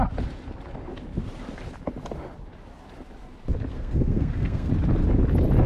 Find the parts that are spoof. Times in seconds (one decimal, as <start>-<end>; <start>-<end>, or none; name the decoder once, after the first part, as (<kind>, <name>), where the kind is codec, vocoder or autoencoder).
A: 3.7-4.7 (codec, SNAC)